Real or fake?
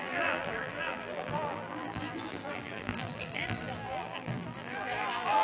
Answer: fake